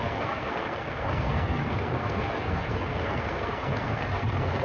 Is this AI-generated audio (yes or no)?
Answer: yes